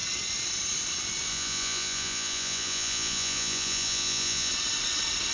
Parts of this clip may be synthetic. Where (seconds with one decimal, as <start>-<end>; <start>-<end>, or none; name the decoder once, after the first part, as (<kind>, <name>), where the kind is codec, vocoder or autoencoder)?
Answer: 1.3-4.5 (vocoder, Vocos)